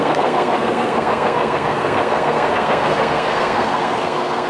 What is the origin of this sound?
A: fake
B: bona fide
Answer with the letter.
A